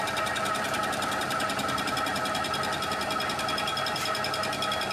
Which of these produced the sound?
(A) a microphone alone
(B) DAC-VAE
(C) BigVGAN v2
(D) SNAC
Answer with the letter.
A